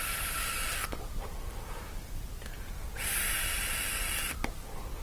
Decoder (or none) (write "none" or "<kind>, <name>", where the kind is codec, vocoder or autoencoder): none